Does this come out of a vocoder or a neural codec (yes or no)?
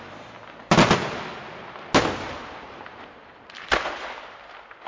no